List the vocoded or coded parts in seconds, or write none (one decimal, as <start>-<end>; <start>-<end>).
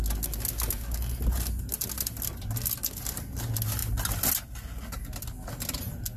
none